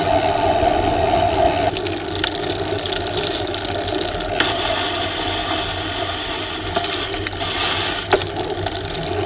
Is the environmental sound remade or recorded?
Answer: recorded